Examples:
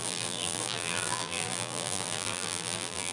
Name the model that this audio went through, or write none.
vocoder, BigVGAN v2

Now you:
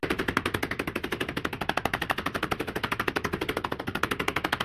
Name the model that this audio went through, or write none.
none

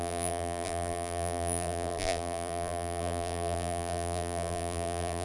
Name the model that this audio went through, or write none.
vocoder, BigVGAN v2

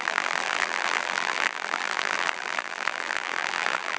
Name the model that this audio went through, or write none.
vocoder, BigVGAN v2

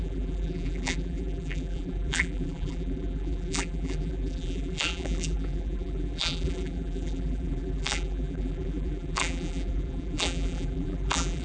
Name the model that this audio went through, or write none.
vocoder, BigVGAN v2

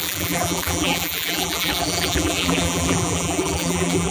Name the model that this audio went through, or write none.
vocoder, BigVGAN v2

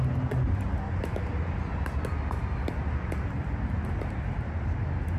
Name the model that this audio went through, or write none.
none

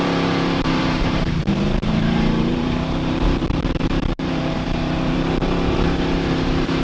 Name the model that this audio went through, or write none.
vocoder, BigVGAN v2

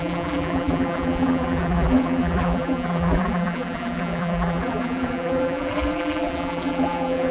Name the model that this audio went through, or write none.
vocoder, BigVGAN v2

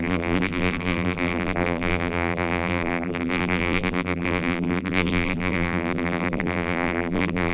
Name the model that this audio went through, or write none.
vocoder, BigVGAN v2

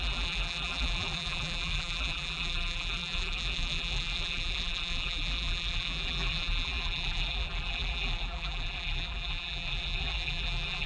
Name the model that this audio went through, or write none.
vocoder, BigVGAN v2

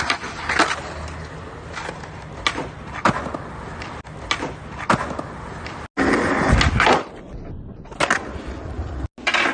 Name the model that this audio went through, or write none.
none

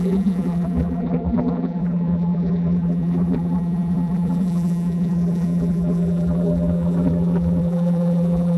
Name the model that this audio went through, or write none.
vocoder, BigVGAN v2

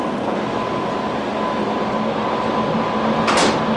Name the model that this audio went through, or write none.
none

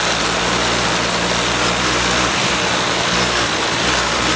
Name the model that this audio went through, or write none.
none